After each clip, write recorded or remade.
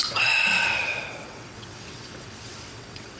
remade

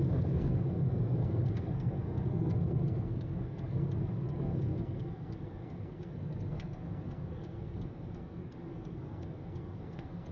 remade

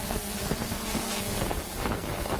remade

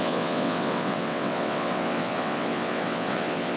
remade